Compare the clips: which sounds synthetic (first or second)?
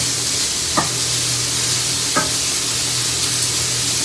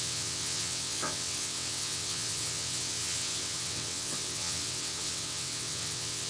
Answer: second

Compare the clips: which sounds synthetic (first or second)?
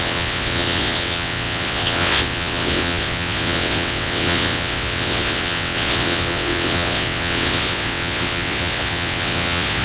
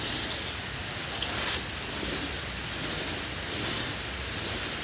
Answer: first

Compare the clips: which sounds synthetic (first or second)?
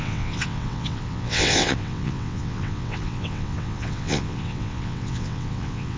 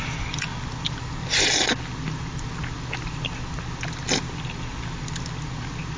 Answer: first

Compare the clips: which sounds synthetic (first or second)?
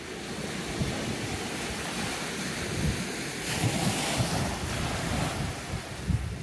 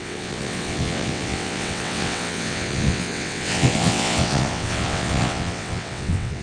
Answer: second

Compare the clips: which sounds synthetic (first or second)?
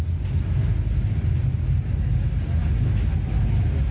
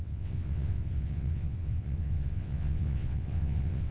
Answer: second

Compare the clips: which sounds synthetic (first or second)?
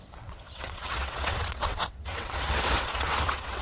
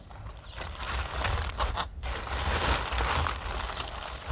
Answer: first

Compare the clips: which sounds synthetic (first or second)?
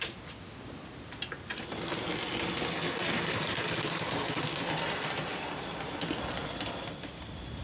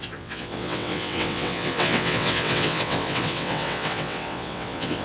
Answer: second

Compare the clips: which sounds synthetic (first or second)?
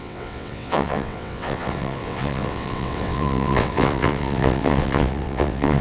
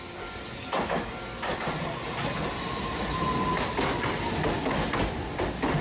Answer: first